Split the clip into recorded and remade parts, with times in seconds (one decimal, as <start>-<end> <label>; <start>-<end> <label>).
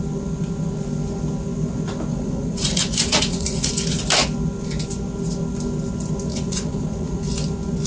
0.0-2.1 recorded; 2.1-3.7 remade; 3.7-6.3 recorded; 6.3-7.3 remade; 7.3-7.9 recorded